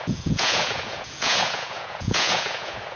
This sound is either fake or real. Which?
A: fake